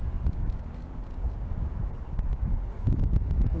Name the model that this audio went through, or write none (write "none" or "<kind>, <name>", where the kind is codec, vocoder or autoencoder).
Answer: codec, DAC